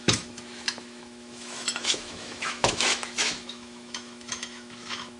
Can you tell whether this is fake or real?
fake